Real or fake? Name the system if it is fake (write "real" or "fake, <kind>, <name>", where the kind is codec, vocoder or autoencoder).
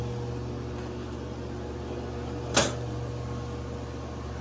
real